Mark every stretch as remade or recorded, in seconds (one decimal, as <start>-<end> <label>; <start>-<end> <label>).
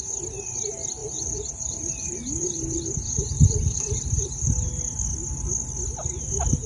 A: 0.0-1.0 recorded; 1.0-4.5 remade; 4.5-6.7 recorded